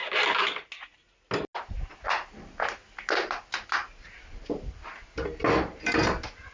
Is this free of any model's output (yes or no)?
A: yes